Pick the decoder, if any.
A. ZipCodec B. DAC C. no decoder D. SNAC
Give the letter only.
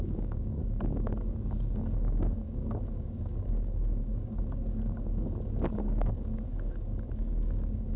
B